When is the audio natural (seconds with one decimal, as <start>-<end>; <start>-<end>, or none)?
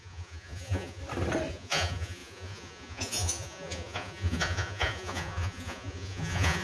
1.0-1.5